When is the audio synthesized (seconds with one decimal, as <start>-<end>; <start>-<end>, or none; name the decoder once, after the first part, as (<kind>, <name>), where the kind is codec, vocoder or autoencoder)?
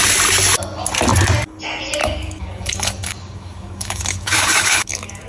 2.0-5.3 (codec, DAC)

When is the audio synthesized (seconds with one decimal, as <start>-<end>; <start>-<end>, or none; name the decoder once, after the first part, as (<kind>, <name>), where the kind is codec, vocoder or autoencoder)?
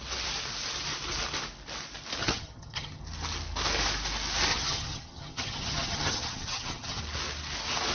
2.2-3.0 (vocoder, HiFi-GAN); 4.5-7.0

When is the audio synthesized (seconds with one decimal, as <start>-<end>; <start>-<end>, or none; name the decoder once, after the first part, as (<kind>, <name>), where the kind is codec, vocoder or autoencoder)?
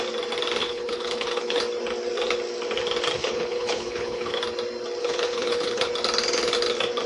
0.6-1.6 (codec, HILCodec); 3.2-4.4; 5.0-5.9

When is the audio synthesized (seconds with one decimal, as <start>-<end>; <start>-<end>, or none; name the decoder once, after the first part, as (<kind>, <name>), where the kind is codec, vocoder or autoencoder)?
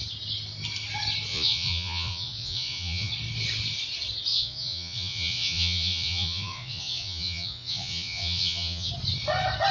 1.3-3.1 (vocoder, Vocos); 4.3-8.9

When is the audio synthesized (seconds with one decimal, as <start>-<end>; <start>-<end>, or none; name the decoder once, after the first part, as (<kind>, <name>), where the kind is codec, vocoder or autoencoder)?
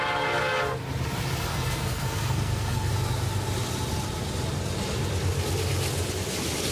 1.5-2.9 (codec, SNAC)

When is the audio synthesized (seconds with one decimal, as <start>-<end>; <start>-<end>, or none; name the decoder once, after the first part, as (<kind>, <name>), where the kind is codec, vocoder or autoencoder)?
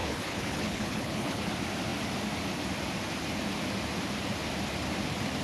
0.0-1.5 (codec, HILCodec)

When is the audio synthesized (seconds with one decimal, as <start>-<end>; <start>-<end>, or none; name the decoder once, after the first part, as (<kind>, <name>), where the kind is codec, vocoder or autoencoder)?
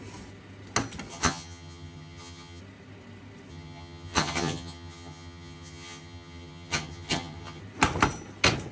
1.1-2.6 (vocoder, HiFi-GAN); 3.5-7.6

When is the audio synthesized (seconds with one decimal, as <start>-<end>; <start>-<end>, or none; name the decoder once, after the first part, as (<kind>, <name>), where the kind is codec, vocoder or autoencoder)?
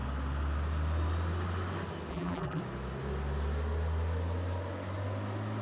2.1-2.6 (vocoder, BigVGAN v2)